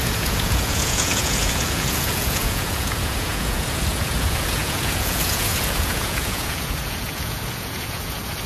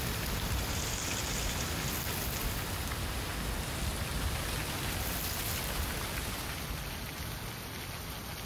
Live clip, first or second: second